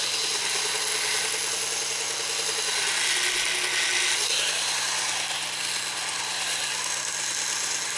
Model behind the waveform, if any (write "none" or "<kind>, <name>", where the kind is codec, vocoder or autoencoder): none